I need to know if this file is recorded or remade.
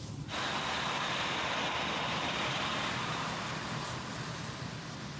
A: remade